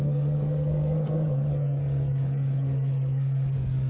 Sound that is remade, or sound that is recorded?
remade